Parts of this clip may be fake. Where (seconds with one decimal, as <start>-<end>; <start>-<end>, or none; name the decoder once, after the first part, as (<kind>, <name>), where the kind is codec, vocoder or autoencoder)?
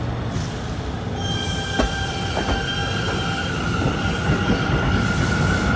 none